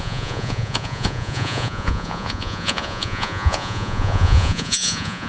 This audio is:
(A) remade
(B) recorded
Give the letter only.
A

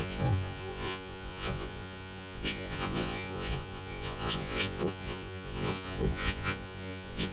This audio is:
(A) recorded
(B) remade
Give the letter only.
B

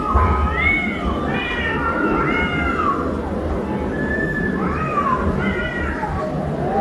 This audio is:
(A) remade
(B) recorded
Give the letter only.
B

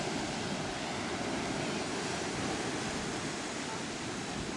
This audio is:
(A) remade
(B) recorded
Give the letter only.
B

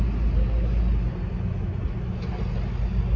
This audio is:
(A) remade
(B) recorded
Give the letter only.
B